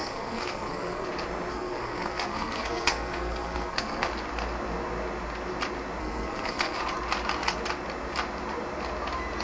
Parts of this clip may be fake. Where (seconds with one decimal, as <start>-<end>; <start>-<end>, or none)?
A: 0.0-1.1; 1.5-4.1; 6.0-6.8